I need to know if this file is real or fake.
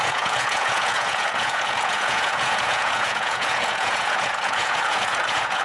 fake